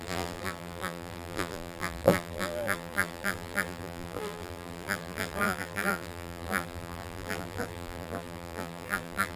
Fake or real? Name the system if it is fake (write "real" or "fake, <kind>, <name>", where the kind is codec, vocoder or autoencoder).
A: fake, vocoder, BigVGAN v2